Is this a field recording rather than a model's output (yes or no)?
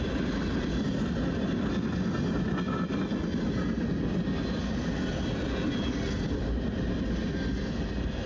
yes